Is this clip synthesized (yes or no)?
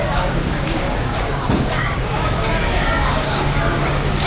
yes